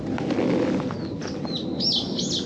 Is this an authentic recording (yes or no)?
yes